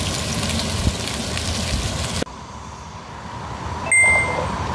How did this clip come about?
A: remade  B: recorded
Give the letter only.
B